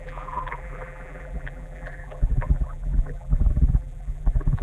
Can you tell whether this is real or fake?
fake